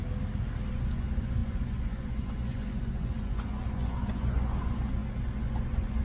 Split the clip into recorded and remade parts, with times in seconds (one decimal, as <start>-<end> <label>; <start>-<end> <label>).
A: 0.0-0.7 recorded; 0.7-6.0 remade